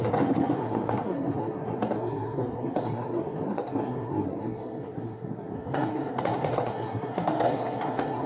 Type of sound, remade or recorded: remade